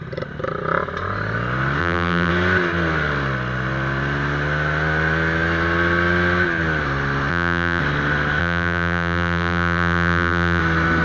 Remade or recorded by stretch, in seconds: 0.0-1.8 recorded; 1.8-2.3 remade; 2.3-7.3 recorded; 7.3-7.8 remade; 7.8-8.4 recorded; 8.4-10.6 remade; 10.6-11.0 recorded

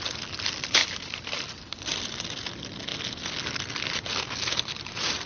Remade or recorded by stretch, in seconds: 0.0-0.8 recorded; 0.8-1.8 remade; 1.8-4.5 recorded; 4.5-5.3 remade

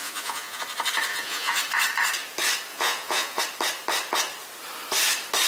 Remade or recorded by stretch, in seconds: 0.0-0.6 remade; 0.6-1.1 recorded; 1.1-1.6 remade; 1.6-2.7 recorded; 2.7-3.4 remade; 3.4-5.5 recorded

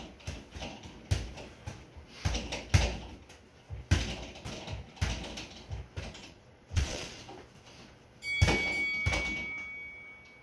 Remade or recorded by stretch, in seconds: 0.0-6.2 recorded; 6.2-7.2 remade; 7.2-10.4 recorded

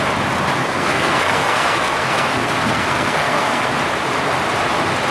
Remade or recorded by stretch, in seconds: 0.0-0.6 recorded; 0.6-3.7 remade; 3.7-5.1 recorded

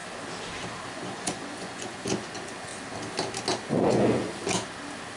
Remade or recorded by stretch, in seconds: 0.0-0.9 recorded; 0.9-2.7 remade; 2.7-3.7 recorded; 3.7-4.4 remade; 4.4-5.2 recorded

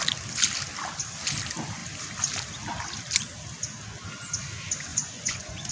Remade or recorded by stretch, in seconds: 0.0-4.9 recorded; 4.9-5.7 remade